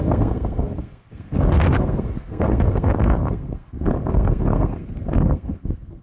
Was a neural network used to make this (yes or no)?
yes